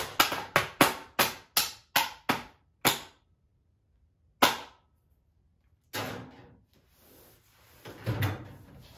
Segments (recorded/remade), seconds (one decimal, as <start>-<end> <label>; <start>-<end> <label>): 0.0-9.0 recorded